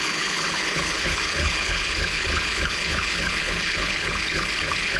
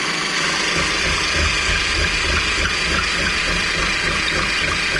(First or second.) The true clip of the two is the second